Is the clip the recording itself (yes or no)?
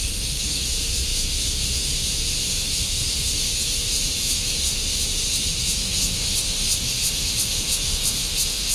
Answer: no